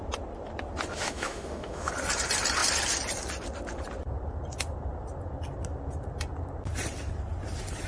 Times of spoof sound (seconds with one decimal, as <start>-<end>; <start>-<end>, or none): 0.9-1.9